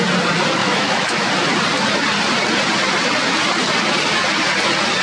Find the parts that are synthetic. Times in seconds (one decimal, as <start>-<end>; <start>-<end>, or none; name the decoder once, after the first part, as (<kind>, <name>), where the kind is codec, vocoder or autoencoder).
0.6-1.3 (autoencoder, DAC-VAE)